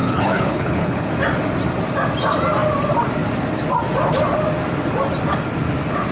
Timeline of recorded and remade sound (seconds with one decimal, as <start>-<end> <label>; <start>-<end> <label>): 0.0-1.1 remade; 1.1-6.1 recorded